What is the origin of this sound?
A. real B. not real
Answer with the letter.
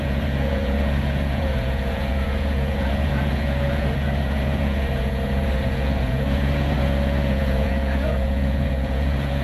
B